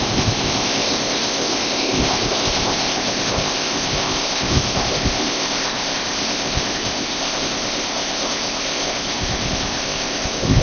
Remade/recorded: remade